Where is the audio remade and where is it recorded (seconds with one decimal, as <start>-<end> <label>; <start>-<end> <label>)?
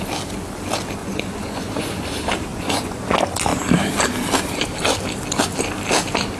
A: 0.0-1.0 recorded; 1.0-2.0 remade; 2.0-2.5 recorded; 2.5-3.0 remade; 3.0-6.4 recorded